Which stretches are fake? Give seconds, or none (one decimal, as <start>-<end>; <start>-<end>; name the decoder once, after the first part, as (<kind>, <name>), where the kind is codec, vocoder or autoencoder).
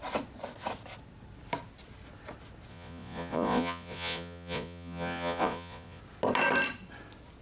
2.7-6.0 (vocoder, Vocos)